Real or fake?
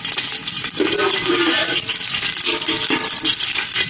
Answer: fake